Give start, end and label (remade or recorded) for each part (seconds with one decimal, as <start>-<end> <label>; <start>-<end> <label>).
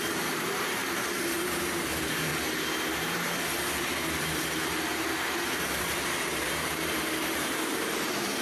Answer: 0.0-2.3 remade; 2.3-2.9 recorded; 2.9-8.4 remade